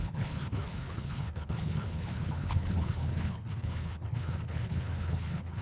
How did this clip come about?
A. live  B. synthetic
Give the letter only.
B